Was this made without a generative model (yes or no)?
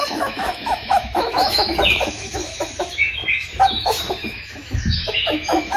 no